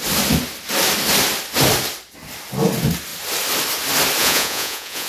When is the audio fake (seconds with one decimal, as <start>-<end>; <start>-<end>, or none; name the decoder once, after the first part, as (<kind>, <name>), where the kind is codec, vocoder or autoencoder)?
4.2-5.1 (vocoder, Vocos)